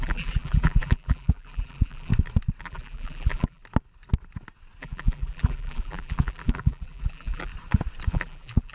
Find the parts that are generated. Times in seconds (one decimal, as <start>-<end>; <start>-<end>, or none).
0.0-2.1; 2.6-3.6; 4.8-7.5; 8.1-8.7